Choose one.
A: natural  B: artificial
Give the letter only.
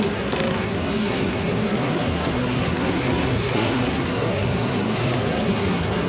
B